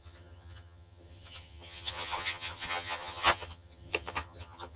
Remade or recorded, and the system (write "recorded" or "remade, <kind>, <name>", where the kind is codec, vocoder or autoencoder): remade, vocoder, HiFi-GAN